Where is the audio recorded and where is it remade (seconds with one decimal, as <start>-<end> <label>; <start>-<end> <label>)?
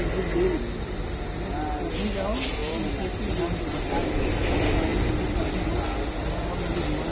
0.0-2.6 recorded; 2.6-4.2 remade; 4.2-4.9 recorded; 4.9-5.4 remade; 5.4-7.1 recorded